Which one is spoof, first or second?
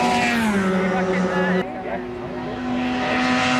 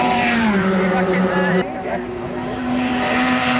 second